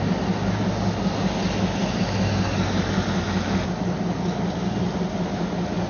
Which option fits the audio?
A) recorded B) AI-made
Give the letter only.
A